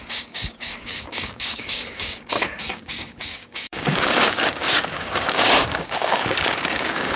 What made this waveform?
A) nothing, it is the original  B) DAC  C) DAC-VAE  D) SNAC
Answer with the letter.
B